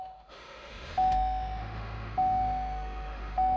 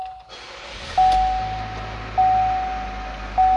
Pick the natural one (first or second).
second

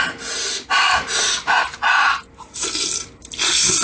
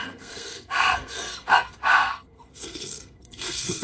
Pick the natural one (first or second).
first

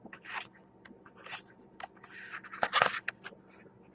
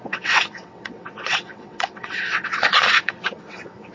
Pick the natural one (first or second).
first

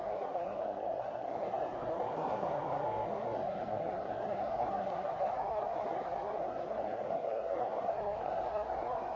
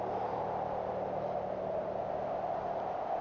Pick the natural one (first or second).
second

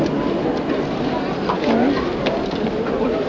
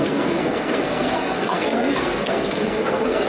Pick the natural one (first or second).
first